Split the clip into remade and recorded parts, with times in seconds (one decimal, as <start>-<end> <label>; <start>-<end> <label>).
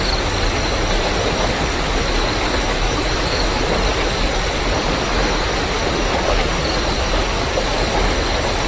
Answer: 0.0-2.5 recorded; 2.5-3.6 remade; 3.6-8.7 recorded